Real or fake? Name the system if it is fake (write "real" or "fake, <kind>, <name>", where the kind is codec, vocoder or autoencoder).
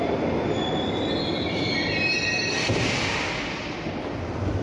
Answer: real